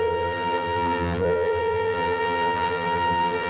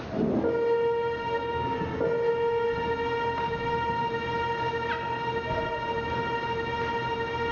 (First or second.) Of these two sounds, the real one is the second